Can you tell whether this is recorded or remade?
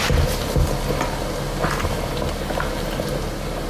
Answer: recorded